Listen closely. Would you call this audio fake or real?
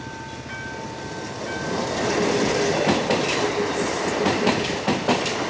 real